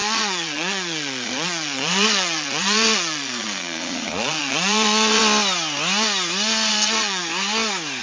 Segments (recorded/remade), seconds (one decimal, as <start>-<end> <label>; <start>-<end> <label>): 0.0-5.2 remade; 5.2-6.7 recorded; 6.7-7.2 remade; 7.2-8.0 recorded